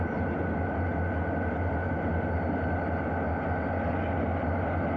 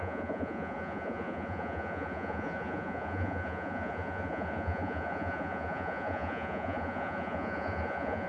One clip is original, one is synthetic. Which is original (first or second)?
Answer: first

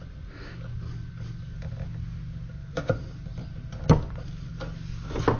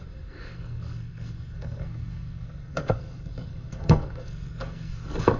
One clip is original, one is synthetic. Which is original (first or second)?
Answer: first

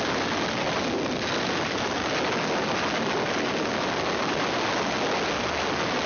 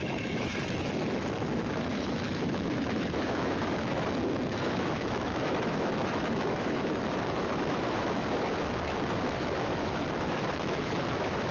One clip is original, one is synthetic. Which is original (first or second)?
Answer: first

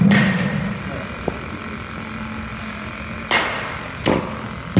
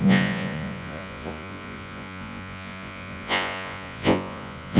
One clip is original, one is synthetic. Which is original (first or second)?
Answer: first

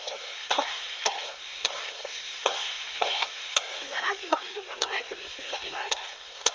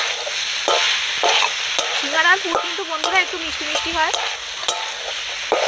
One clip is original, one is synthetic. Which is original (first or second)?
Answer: second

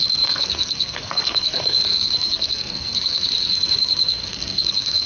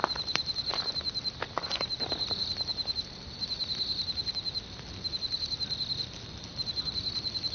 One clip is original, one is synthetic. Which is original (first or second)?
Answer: second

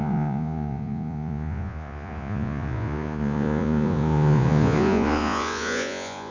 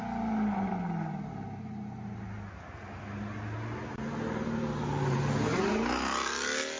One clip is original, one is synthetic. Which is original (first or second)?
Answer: second